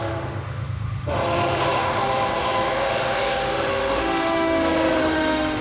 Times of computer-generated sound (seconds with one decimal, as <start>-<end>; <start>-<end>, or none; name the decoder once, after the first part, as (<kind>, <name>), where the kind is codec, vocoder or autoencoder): 0.0-5.6 (autoencoder, DAC-VAE)